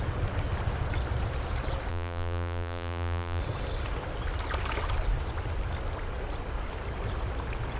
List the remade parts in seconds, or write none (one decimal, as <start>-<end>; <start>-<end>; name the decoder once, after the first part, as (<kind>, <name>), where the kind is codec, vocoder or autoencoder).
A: 1.9-3.4 (vocoder, BigVGAN v2)